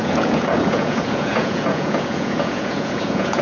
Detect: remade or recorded remade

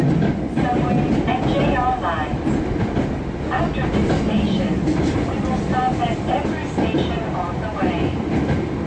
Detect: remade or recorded recorded